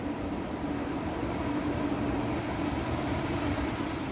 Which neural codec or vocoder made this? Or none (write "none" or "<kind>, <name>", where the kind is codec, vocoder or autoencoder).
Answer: vocoder, BigVGAN v2